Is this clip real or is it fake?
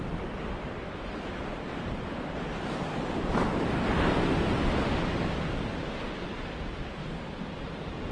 real